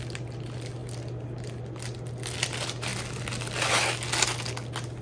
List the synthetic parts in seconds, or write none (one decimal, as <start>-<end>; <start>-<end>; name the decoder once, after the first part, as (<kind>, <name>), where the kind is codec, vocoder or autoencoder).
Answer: none